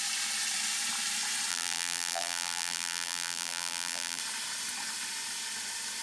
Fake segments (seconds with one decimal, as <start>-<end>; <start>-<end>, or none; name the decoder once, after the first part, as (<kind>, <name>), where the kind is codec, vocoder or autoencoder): 1.5-4.2 (vocoder, BigVGAN v2)